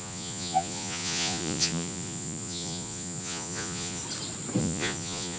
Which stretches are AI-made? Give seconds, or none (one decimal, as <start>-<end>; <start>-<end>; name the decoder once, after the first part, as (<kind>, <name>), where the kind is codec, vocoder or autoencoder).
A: 0.0-4.0 (vocoder, Vocos); 4.6-5.4